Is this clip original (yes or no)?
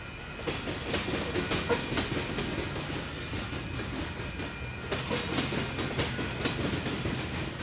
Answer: yes